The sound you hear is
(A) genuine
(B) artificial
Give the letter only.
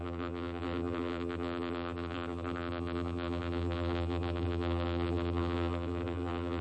B